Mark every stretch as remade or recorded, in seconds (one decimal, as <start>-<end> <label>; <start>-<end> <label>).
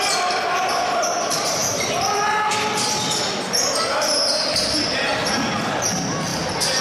0.0-6.8 recorded